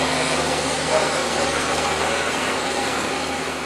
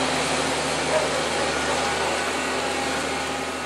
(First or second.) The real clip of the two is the second